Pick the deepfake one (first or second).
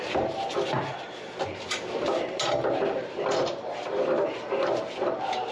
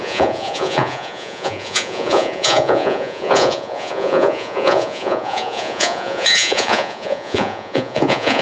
second